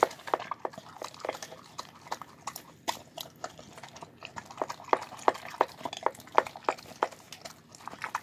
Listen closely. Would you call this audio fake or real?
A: real